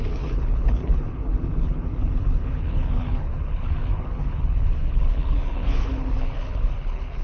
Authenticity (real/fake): fake